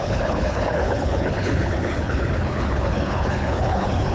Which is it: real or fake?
fake